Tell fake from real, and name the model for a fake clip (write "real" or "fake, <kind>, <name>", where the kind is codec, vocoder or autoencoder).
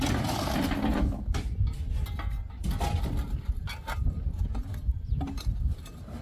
real